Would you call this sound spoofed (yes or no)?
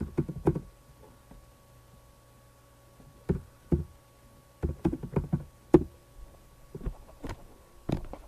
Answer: no